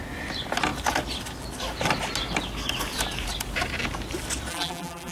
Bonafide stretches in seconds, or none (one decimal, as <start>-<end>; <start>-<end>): 0.0-4.5